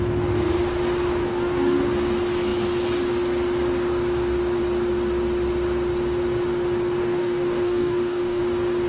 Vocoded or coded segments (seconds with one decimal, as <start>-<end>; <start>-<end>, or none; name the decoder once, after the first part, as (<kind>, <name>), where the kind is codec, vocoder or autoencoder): 1.2-1.8 (codec, DAC); 7.0-8.4